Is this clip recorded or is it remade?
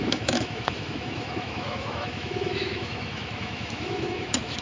remade